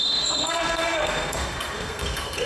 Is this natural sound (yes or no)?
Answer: no